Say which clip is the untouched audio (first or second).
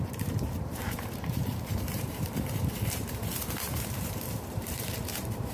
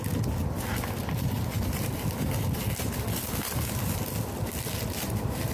second